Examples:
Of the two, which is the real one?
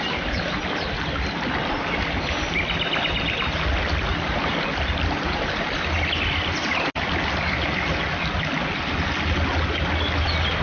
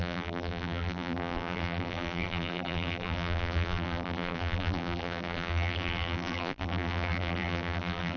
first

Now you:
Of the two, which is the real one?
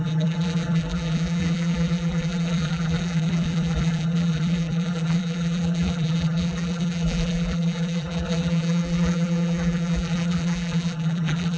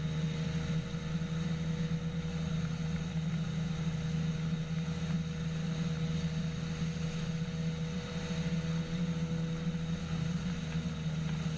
second